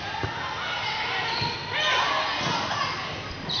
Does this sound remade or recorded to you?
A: recorded